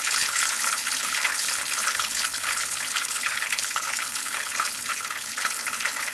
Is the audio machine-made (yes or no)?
yes